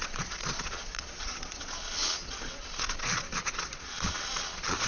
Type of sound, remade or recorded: remade